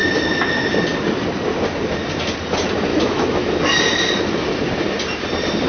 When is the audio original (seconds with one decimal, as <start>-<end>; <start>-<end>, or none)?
0.0-2.9; 3.5-5.7